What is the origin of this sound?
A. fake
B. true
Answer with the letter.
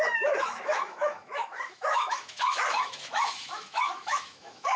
A